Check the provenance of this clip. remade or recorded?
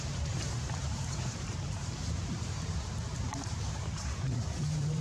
remade